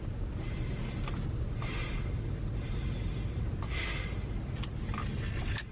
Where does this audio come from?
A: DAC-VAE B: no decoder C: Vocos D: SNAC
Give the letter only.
B